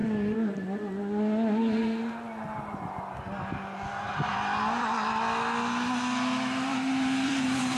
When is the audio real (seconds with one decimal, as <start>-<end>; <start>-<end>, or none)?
0.0-6.9